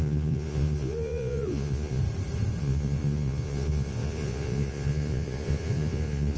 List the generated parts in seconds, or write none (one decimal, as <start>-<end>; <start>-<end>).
0.0-2.0; 2.6-6.4